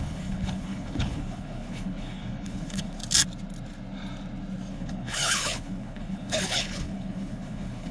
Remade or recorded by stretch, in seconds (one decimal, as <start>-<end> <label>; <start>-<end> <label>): 0.0-3.0 remade; 3.0-4.7 recorded; 4.7-7.9 remade